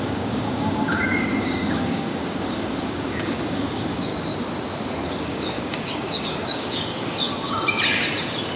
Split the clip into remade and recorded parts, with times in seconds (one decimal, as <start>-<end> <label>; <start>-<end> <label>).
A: 0.0-4.1 remade; 4.1-5.1 recorded; 5.1-7.3 remade; 7.3-8.6 recorded